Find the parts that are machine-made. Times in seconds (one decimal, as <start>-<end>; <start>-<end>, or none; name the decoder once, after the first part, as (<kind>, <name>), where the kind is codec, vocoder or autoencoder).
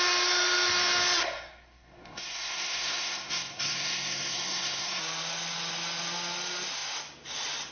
1.2-5.0 (codec, SNAC)